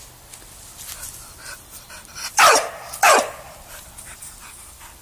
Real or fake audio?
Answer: real